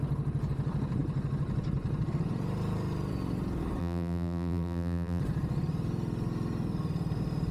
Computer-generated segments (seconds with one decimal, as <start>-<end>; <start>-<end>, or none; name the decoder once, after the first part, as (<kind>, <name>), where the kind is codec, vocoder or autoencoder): 3.8-5.2 (vocoder, BigVGAN v2)